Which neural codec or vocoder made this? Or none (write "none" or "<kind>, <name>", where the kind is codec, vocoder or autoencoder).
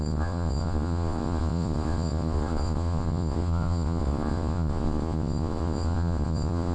vocoder, Vocos